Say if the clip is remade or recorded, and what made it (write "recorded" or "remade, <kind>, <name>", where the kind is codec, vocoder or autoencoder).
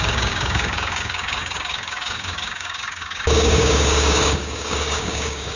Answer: remade, codec, DAC